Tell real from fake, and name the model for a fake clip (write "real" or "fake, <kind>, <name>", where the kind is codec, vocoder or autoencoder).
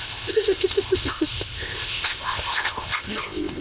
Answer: fake, codec, ZipCodec